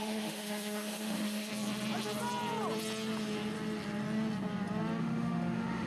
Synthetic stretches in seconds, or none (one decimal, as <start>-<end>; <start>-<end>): 0.0-1.5; 5.0-5.9